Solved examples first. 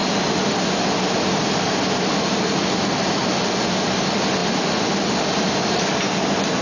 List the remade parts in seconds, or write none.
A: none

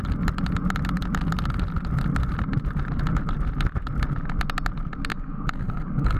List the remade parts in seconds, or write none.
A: 5.1-6.2 (codec, DAC)